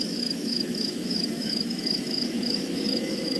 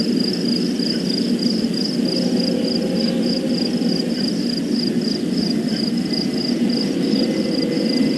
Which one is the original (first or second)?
second